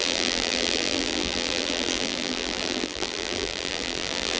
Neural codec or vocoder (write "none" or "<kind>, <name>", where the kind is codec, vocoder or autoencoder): vocoder, BigVGAN v2